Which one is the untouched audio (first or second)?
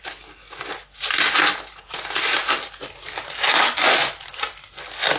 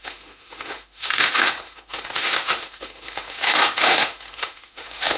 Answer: first